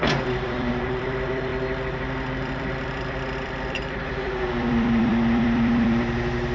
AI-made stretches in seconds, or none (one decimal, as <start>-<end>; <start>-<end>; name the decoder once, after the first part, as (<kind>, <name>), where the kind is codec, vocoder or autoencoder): 0.0-6.5 (vocoder, BigVGAN v2)